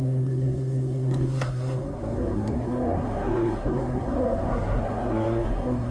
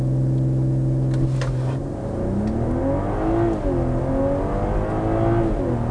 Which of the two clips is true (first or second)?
second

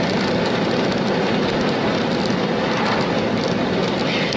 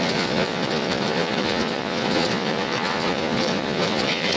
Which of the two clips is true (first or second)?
first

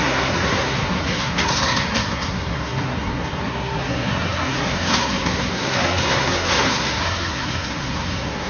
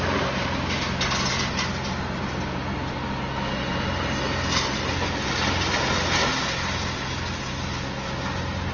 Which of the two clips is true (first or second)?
second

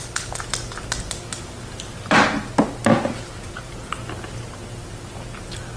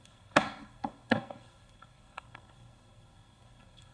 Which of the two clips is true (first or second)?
first